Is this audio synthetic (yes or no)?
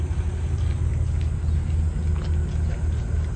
no